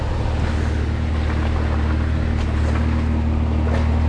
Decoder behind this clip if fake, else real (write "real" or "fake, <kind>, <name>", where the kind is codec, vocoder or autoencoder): real